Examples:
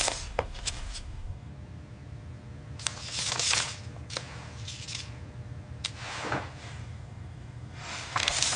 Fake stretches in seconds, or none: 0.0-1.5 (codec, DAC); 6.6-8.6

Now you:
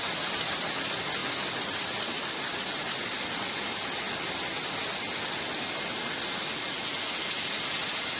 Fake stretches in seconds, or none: none

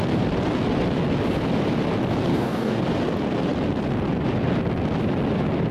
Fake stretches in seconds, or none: 2.3-2.8 (codec, DAC)

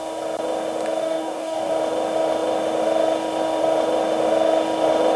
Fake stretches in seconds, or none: 1.0-1.7 (codec, DAC)

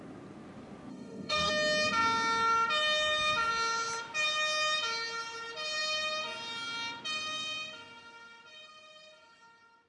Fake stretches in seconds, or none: 0.9-1.5 (codec, DAC)

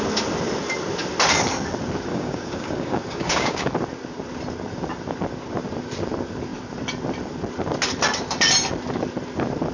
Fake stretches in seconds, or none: 2.1-3.7 (codec, DAC)

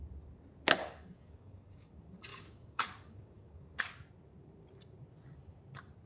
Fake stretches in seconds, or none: 0.8-1.9 (codec, DAC); 2.3-3.8